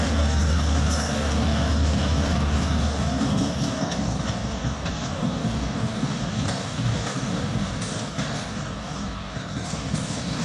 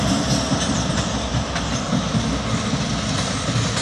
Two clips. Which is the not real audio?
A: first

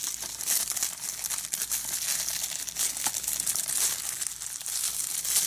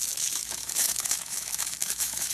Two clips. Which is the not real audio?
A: second